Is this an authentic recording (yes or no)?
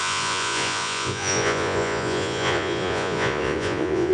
no